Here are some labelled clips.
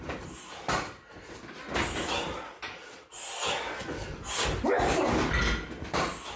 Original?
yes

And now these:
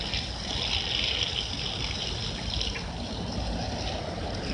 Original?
yes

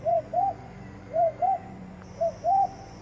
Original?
no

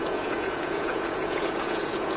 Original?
no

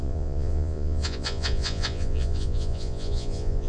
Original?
no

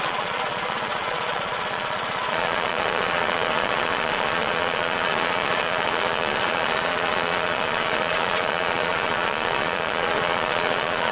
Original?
no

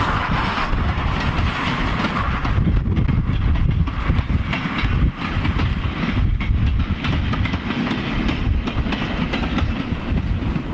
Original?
yes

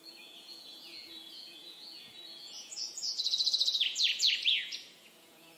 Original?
no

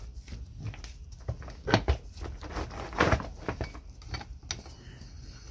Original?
yes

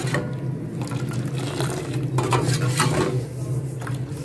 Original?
yes